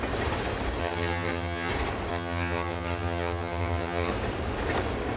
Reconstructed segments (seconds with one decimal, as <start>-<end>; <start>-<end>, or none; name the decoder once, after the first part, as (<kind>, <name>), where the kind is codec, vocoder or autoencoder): 0.8-1.7 (vocoder, HiFi-GAN); 2.1-4.1